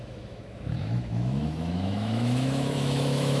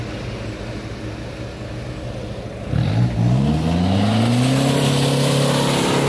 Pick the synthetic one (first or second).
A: first